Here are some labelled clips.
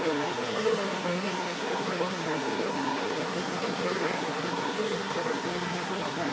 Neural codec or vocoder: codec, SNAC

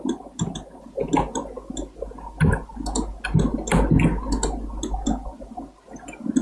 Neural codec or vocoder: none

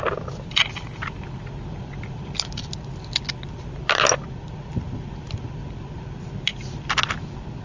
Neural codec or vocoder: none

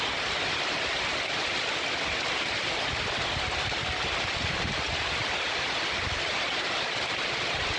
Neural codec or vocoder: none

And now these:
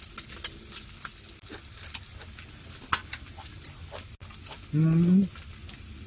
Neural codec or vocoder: none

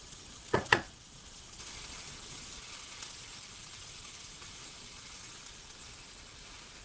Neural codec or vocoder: vocoder, Vocos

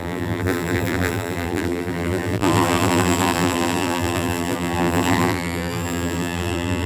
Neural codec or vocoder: vocoder, BigVGAN v2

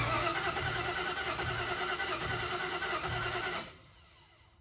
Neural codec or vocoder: none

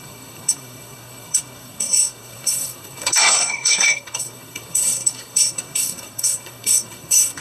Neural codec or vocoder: codec, SNAC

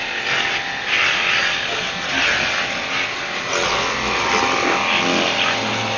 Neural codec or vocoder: none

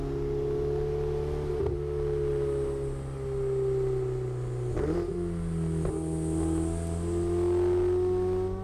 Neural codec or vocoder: none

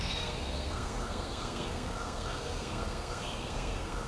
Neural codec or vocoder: codec, SNAC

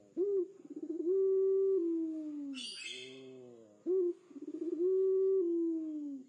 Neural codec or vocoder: none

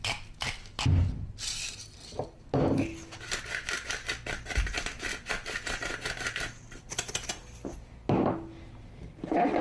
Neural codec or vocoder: none